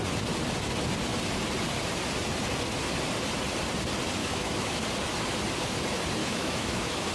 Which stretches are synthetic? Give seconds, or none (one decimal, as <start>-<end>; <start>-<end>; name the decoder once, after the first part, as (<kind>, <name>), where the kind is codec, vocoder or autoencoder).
4.2-4.8 (autoencoder, DAC-VAE); 6.2-7.1